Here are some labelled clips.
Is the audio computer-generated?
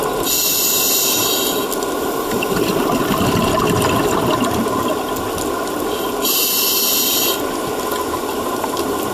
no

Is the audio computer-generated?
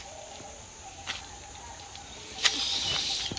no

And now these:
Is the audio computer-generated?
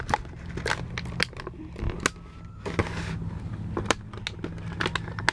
no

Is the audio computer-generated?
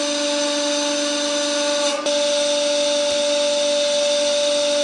no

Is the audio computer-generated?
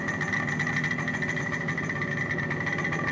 no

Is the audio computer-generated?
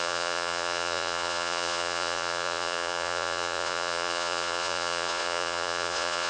yes